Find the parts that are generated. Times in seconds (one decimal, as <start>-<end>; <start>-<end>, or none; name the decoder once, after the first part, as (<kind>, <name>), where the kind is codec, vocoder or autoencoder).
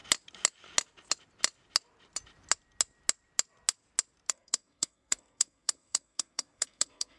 4.3-7.2 (codec, SNAC)